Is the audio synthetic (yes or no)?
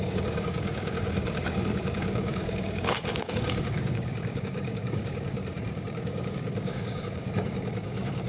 yes